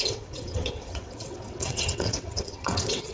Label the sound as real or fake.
fake